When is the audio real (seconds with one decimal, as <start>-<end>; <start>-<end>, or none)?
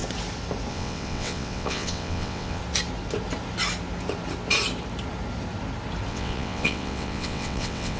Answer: 0.0-0.7; 2.6-6.1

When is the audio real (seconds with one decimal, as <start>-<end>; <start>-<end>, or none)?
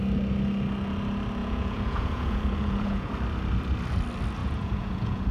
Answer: 0.0-1.4; 3.1-4.4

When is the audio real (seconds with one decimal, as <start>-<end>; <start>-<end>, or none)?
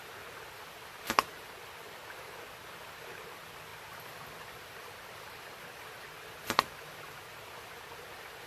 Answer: 0.0-3.7; 5.4-8.5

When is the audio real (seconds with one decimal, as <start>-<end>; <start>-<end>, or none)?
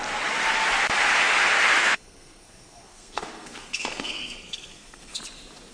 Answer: 0.0-1.8; 5.2-5.7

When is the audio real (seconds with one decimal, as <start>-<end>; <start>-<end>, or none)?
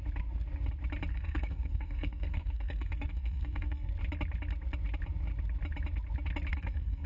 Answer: 0.0-1.1; 3.9-6.5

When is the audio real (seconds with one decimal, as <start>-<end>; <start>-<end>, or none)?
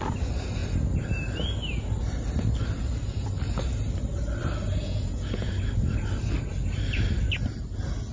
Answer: 0.0-4.8; 5.5-8.1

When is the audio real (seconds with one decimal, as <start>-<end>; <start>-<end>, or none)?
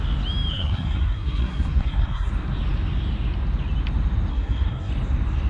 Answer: 0.0-0.5; 2.3-4.3; 4.9-5.5